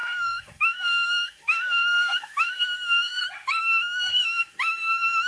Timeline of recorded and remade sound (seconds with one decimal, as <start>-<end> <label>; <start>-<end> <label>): 0.0-3.2 remade; 3.2-3.6 recorded; 3.6-5.3 remade